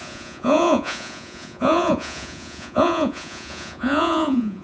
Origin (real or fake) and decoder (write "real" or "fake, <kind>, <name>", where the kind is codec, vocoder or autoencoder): fake, vocoder, Vocos